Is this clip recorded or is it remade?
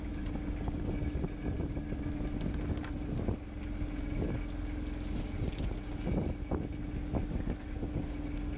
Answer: recorded